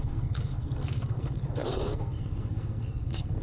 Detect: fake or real fake